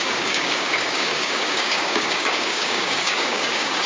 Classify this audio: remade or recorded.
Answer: remade